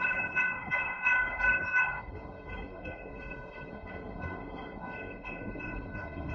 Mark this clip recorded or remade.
remade